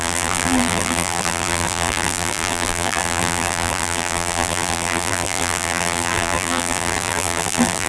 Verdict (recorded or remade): remade